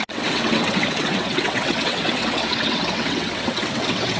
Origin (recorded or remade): remade